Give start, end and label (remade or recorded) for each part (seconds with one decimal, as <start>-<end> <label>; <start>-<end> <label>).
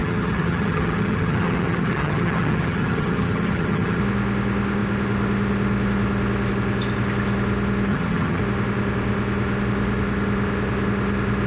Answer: 0.0-4.0 remade; 4.0-7.9 recorded; 7.9-8.4 remade; 8.4-11.5 recorded